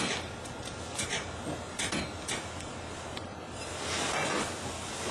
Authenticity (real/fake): real